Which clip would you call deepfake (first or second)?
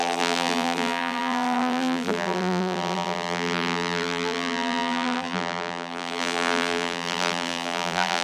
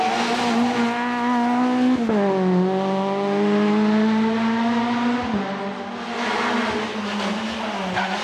first